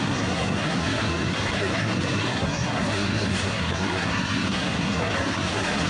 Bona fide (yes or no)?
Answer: no